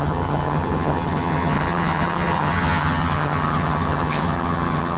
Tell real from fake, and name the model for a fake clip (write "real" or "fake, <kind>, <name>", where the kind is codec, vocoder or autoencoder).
fake, vocoder, HiFi-GAN